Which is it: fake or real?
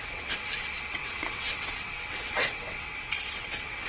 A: fake